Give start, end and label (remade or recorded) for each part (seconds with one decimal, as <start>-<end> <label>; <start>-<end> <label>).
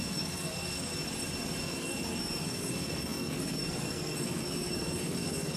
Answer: 0.0-0.9 remade; 0.9-1.6 recorded; 1.6-5.6 remade